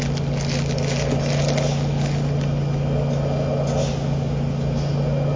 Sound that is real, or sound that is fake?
real